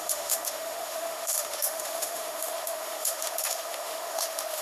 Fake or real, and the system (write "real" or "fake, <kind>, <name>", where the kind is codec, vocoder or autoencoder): fake, autoencoder, DAC-VAE